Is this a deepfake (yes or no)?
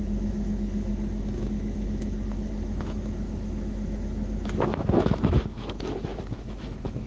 yes